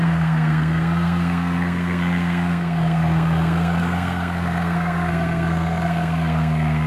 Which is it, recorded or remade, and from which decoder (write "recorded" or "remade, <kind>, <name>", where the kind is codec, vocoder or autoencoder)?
remade, codec, SNAC